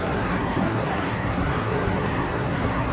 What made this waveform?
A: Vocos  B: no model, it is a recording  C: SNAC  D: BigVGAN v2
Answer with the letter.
C